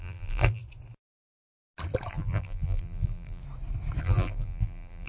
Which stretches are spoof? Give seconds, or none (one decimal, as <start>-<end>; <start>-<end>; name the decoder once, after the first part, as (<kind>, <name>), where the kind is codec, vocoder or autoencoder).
0.0-0.6 (vocoder, BigVGAN v2); 2.1-3.4; 4.0-5.1